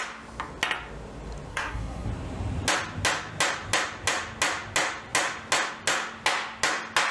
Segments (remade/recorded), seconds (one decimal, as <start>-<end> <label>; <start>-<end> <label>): 0.0-1.5 recorded; 1.5-2.1 remade; 2.1-7.1 recorded